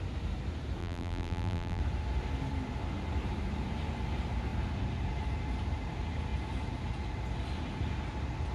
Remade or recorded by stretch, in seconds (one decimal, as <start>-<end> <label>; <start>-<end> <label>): 0.0-0.8 recorded; 0.8-1.8 remade; 1.8-8.5 recorded